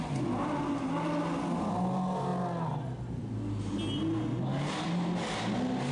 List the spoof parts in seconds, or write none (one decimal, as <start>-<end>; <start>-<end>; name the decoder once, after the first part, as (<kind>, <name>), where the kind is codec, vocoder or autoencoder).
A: none